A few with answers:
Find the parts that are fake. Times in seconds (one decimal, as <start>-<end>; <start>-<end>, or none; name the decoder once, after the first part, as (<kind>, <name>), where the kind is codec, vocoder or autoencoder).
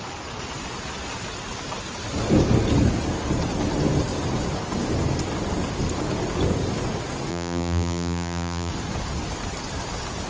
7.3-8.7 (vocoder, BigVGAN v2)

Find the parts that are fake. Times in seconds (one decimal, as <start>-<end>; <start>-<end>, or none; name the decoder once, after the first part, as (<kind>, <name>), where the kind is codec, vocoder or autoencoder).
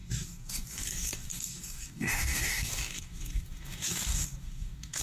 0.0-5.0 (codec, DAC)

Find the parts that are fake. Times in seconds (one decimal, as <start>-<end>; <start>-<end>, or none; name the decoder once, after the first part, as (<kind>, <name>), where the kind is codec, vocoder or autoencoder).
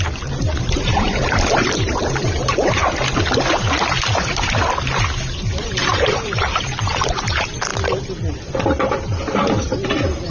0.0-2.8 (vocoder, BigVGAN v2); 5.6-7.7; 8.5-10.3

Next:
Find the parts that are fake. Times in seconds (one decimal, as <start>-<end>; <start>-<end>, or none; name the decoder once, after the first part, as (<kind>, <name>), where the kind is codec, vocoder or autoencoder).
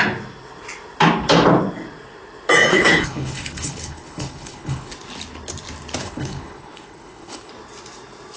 2.7-4.9 (codec, HILCodec); 6.0-7.5